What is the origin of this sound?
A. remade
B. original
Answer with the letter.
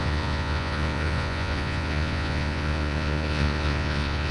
A